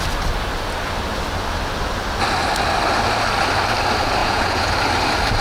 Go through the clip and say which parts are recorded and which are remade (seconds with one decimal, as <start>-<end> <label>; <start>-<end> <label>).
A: 0.0-4.2 recorded; 4.2-4.7 remade; 4.7-5.4 recorded